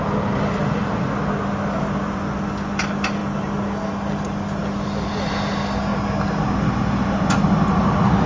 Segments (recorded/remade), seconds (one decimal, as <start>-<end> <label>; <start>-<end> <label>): 0.0-8.3 recorded